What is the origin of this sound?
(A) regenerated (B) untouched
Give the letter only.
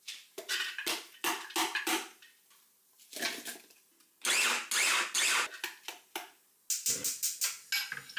B